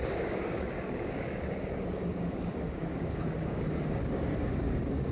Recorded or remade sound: remade